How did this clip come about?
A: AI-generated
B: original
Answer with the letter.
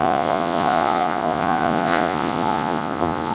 A